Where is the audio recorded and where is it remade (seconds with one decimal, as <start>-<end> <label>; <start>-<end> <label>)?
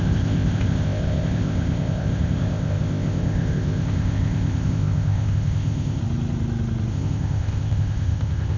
0.0-6.0 remade; 6.0-6.9 recorded; 6.9-8.6 remade